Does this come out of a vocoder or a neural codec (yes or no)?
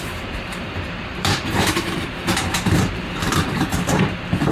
yes